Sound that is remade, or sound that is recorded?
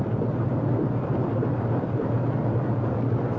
remade